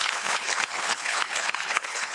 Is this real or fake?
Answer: fake